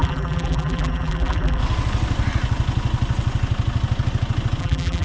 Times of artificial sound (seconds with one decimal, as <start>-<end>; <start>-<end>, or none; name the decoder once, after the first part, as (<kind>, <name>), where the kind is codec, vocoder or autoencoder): 0.0-1.6 (vocoder, BigVGAN v2); 4.6-5.0